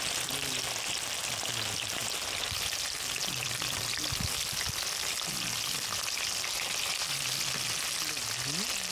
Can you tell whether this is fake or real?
real